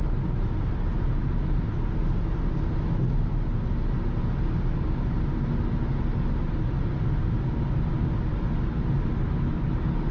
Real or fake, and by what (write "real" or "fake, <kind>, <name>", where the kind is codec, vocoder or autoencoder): real